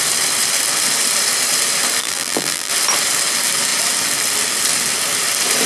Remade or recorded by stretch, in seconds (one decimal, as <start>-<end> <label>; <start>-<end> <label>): 0.0-2.0 recorded; 2.0-2.7 remade; 2.7-5.7 recorded